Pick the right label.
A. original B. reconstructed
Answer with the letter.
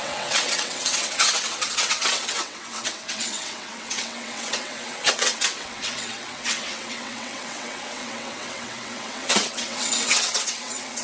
B